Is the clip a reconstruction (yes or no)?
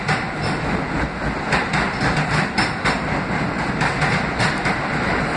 no